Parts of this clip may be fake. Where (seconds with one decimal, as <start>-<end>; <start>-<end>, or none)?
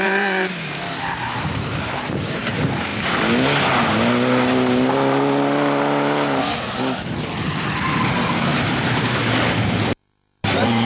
0.0-2.9; 8.1-10.8